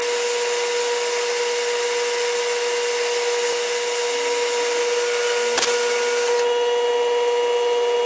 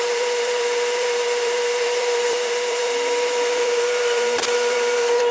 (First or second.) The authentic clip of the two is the first